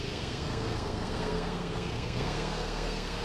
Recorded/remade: remade